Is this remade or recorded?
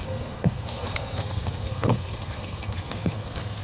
remade